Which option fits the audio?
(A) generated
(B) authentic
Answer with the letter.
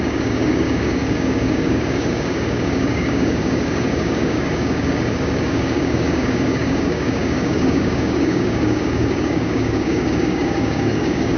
A